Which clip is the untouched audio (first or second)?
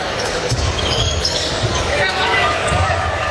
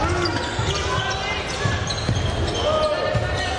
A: second